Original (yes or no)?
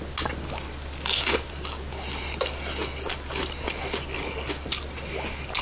yes